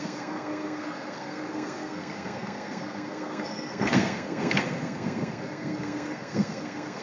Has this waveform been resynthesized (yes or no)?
yes